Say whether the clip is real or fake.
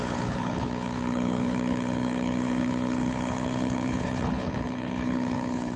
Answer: fake